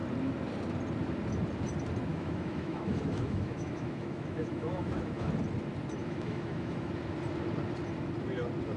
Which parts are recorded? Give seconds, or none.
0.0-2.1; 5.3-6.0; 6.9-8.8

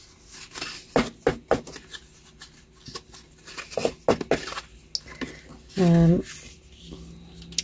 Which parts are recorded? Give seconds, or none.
0.0-7.6

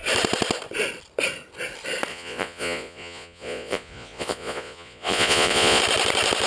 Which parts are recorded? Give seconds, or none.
0.0-2.1; 5.8-6.5